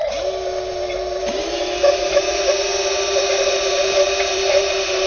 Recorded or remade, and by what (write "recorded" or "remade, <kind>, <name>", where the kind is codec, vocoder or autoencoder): remade, vocoder, BigVGAN v2